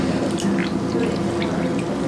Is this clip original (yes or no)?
yes